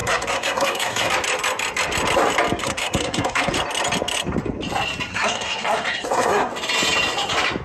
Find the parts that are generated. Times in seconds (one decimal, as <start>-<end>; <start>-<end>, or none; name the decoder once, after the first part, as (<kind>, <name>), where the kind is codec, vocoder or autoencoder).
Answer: 0.0-1.1 (codec, SNAC); 2.6-3.5; 5.1-6.5